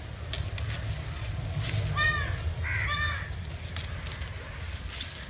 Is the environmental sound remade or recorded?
recorded